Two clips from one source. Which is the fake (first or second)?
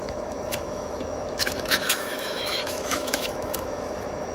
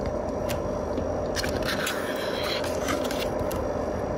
first